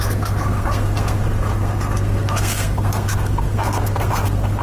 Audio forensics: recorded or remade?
remade